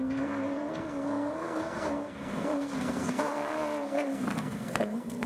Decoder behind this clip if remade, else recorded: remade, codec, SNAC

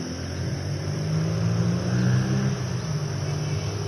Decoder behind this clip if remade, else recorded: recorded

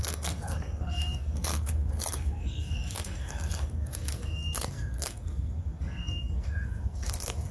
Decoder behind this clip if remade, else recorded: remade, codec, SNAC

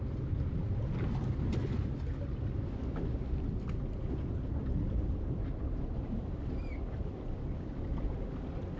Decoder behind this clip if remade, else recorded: recorded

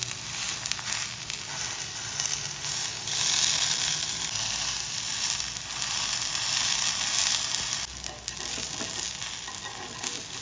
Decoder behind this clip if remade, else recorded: recorded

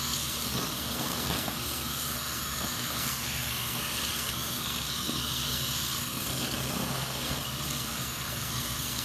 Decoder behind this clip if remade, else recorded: remade, codec, SNAC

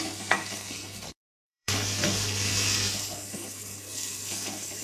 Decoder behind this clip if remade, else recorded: remade, codec, SNAC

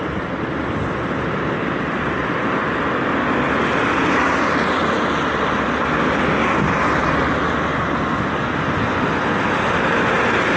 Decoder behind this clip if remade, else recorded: recorded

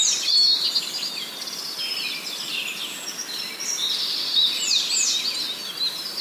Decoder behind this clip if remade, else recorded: recorded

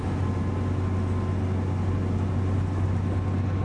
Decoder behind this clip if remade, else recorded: recorded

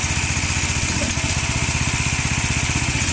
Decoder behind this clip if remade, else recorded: recorded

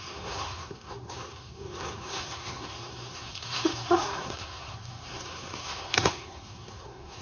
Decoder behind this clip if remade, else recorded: remade, codec, SNAC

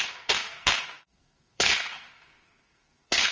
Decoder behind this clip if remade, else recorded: remade, codec, SNAC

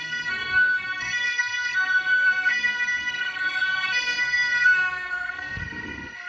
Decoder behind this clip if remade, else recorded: remade, codec, SNAC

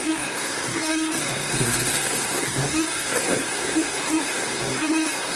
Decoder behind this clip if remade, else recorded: remade, codec, SNAC